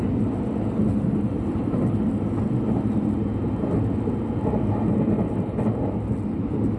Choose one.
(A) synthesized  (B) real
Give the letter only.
B